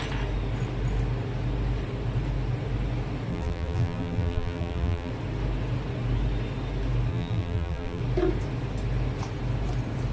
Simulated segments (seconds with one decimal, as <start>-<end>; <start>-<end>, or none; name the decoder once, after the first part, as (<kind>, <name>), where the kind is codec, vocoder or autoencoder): 3.3-5.1 (vocoder, BigVGAN v2); 7.1-8.0